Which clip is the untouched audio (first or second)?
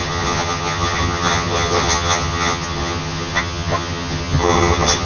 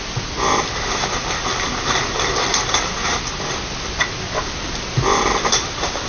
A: second